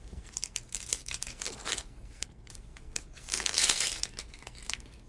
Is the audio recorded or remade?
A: remade